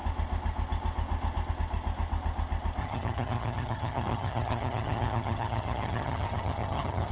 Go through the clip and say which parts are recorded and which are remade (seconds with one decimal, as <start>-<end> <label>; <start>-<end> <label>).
0.0-2.8 recorded; 2.8-7.1 remade